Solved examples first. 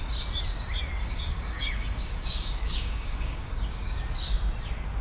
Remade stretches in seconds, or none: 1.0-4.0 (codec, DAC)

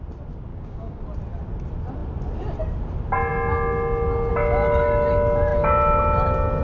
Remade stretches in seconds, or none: 0.5-1.0 (codec, DAC)

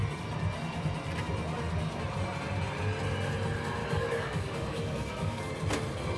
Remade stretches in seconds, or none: 3.8-5.5 (codec, DAC)

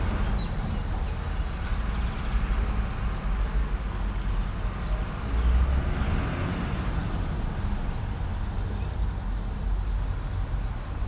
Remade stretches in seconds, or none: 3.6-4.3 (codec, DAC)